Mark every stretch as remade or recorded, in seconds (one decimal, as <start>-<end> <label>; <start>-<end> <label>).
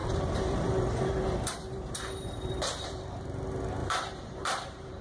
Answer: 0.0-3.0 remade; 3.0-3.8 recorded; 3.8-5.0 remade